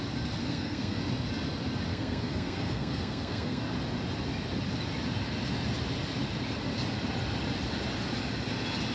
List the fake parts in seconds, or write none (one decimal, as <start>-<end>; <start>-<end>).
0.4-1.0; 1.9-3.6